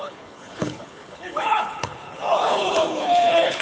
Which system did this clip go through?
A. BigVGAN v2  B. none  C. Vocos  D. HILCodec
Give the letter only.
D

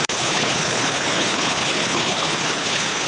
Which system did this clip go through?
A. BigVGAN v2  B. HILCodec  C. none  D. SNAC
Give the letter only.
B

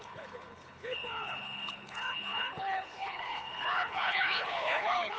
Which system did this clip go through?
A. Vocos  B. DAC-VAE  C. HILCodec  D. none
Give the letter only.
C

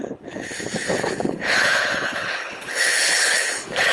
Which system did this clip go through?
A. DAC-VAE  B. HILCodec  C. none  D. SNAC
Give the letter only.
B